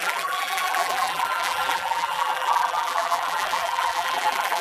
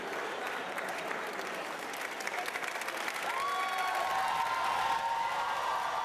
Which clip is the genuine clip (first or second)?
second